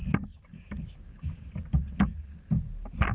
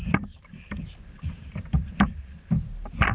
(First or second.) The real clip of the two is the first